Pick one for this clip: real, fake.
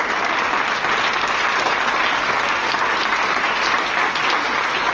real